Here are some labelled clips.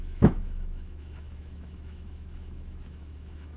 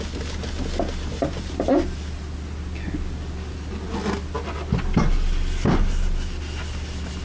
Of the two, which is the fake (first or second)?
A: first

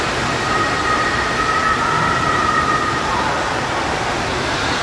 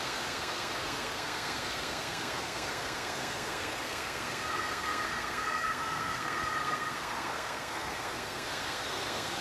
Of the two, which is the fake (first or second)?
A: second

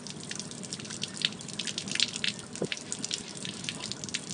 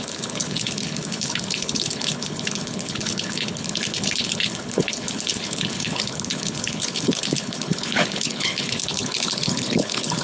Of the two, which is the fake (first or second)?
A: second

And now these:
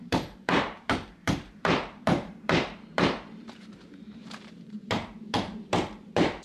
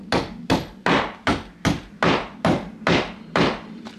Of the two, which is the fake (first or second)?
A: first